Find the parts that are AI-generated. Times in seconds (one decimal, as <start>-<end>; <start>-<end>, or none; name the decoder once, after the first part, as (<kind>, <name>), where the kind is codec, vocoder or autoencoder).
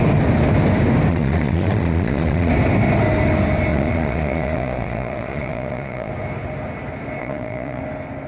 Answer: 1.1-2.5 (vocoder, Vocos); 3.7-6.1; 7.2-7.8